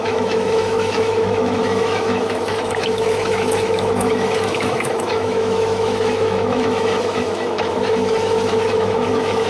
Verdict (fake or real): fake